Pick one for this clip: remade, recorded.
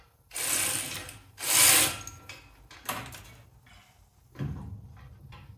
recorded